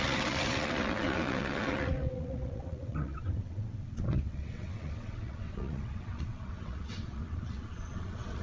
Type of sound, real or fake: fake